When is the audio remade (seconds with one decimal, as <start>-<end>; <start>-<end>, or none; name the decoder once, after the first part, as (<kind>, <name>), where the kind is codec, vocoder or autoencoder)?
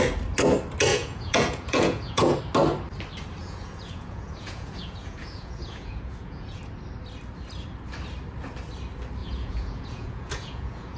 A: 0.9-2.4 (vocoder, Vocos); 3.4-6.6; 9.2-11.0